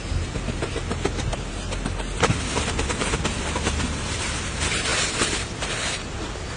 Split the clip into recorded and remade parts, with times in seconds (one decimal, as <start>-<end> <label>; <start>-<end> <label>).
0.0-6.6 recorded